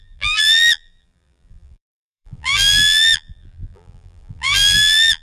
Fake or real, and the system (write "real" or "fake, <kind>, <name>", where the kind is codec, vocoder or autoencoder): fake, vocoder, BigVGAN v2